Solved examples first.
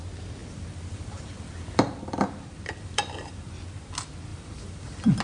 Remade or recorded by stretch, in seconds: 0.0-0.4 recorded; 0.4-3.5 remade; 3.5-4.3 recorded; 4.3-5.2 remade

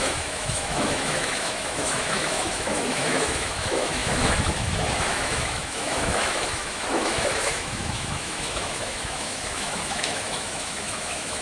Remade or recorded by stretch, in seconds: 0.0-11.4 remade